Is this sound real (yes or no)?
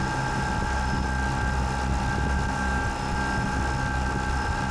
yes